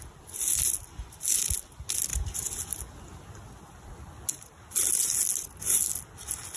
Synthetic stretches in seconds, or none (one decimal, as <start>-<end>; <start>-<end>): none